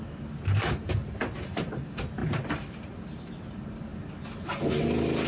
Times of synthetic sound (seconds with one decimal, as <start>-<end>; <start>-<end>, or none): none